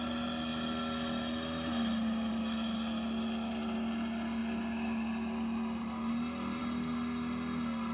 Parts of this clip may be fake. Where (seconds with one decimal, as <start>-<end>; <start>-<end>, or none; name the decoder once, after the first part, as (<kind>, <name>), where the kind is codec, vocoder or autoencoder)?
none